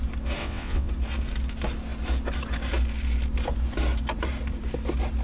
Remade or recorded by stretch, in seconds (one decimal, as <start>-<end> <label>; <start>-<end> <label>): 0.0-0.4 recorded; 0.4-0.9 remade; 0.9-5.2 recorded